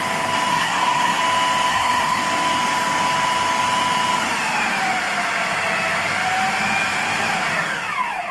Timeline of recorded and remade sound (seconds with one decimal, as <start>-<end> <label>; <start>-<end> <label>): 0.0-0.5 recorded; 0.5-1.2 remade; 1.2-1.7 recorded; 1.7-2.2 remade; 2.2-8.3 recorded